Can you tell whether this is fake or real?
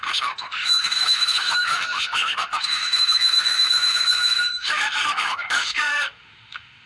fake